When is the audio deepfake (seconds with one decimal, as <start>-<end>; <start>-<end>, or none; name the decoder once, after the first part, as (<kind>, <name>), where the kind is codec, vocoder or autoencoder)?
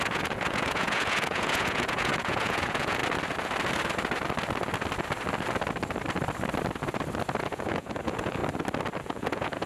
0.0-3.0 (vocoder, Vocos); 7.4-8.4; 9.0-9.7